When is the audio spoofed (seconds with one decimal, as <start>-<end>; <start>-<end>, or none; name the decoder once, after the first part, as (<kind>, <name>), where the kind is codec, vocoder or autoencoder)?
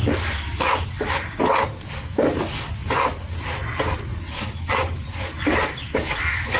none